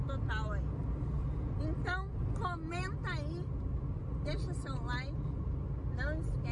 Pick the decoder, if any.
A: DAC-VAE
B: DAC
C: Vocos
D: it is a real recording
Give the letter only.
D